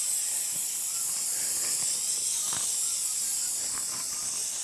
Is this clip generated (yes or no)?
no